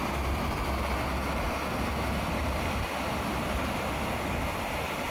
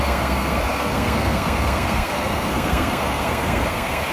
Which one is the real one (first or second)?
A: first